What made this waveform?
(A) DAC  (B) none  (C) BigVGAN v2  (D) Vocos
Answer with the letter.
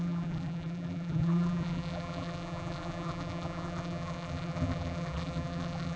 C